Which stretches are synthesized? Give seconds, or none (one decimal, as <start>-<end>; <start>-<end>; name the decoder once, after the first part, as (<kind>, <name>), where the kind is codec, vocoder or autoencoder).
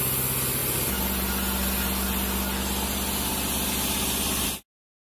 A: none